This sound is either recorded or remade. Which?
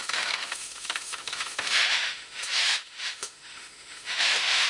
remade